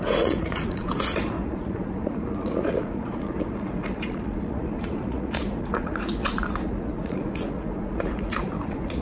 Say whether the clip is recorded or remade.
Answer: remade